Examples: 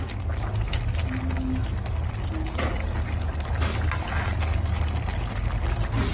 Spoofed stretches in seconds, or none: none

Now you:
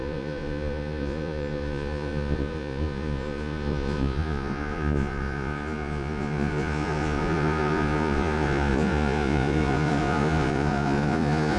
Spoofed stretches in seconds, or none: 0.0-11.6 (vocoder, Vocos)

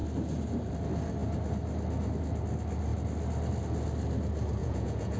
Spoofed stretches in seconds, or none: 4.6-5.2 (vocoder, Vocos)

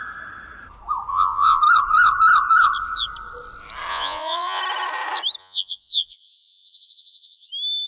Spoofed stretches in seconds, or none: 1.1-1.6 (vocoder, Vocos); 3.9-4.6; 5.4-7.5

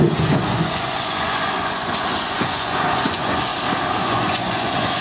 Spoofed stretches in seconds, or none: 0.0-3.5 (vocoder, Vocos); 4.0-5.0

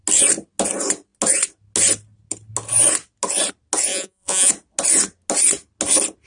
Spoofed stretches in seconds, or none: 3.9-4.5 (vocoder, Vocos)

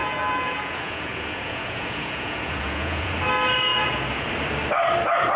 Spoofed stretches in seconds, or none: 0.0-3.2 (vocoder, Vocos); 3.7-4.3